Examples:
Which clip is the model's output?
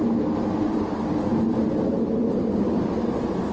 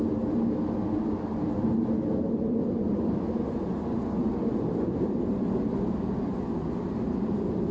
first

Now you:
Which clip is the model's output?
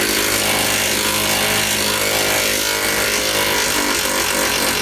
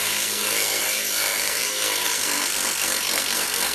second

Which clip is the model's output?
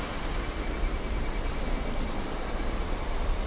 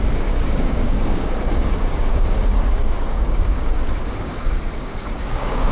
second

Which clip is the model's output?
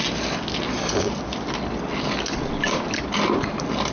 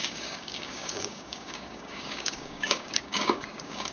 second